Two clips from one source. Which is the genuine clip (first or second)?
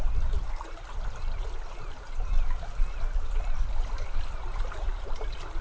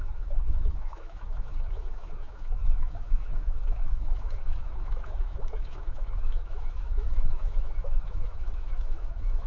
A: first